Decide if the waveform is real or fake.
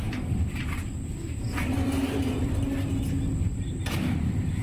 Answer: real